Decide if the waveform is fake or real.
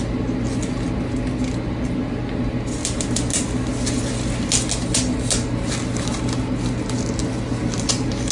real